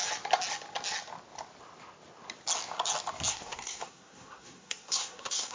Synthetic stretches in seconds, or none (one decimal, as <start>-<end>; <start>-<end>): 3.3-5.5